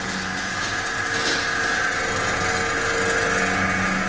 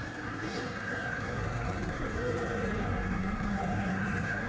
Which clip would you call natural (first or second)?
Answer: first